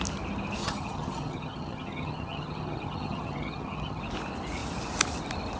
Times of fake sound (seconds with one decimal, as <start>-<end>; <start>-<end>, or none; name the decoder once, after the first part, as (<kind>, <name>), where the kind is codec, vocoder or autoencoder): 0.6-4.0 (vocoder, HiFi-GAN)